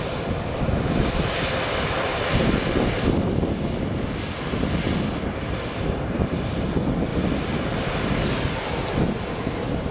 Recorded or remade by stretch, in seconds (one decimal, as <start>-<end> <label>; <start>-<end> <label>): 0.0-9.9 recorded